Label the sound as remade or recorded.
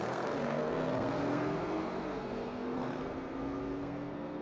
remade